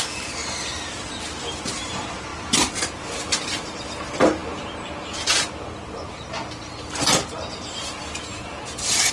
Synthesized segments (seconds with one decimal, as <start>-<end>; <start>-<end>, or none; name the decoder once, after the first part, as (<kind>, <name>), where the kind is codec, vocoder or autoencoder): none